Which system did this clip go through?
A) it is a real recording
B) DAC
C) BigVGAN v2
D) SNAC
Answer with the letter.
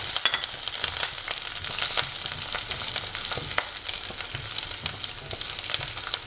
A